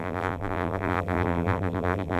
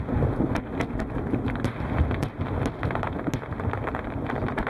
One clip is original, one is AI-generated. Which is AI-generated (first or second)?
first